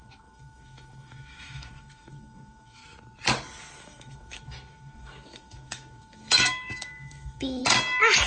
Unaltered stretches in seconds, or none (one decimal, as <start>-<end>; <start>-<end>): 2.8-3.8; 7.6-8.3